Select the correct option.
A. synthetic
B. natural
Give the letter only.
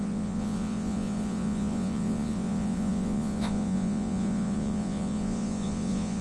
A